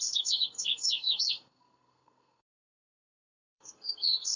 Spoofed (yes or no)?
yes